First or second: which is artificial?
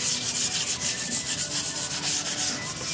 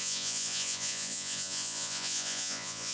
second